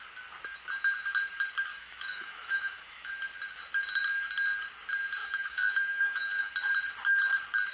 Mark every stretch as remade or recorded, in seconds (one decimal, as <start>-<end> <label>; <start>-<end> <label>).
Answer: 0.0-1.7 recorded; 1.7-3.1 remade; 3.1-5.2 recorded; 5.2-6.5 remade; 6.5-7.7 recorded